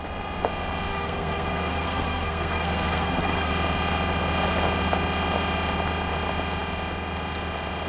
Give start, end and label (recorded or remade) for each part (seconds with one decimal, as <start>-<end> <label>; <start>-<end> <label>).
0.0-0.9 recorded; 0.9-3.5 remade; 3.5-7.9 recorded